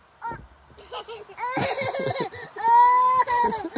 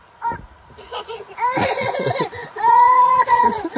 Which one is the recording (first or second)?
first